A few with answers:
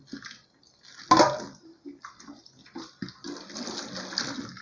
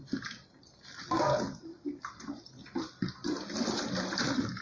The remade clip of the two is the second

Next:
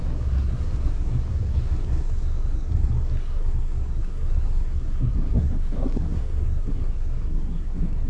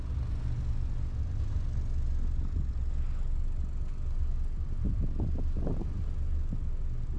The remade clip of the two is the first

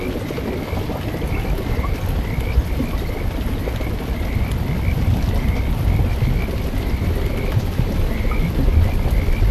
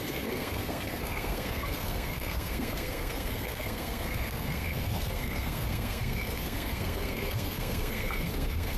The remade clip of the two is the second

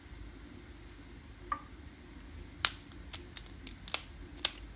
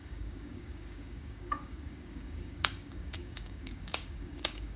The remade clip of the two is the second